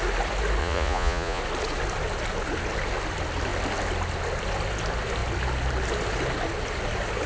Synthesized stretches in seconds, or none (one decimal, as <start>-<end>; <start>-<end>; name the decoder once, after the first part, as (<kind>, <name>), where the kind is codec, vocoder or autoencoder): 0.6-1.4 (vocoder, Vocos)